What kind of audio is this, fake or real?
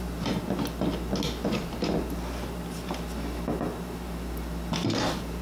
real